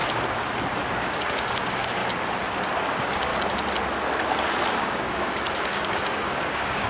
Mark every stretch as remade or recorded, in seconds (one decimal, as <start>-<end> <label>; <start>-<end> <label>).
0.0-0.9 recorded; 0.9-2.0 remade; 2.0-2.8 recorded; 2.8-3.3 remade; 3.3-4.8 recorded; 4.8-6.9 remade